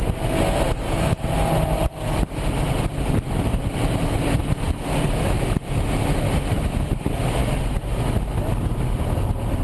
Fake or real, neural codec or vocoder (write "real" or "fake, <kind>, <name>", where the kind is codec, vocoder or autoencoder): real